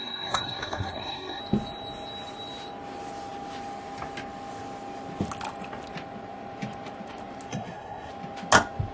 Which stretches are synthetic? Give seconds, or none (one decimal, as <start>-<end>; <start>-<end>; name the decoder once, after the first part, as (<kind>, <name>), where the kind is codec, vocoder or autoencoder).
0.0-1.4 (codec, SNAC); 7.5-8.1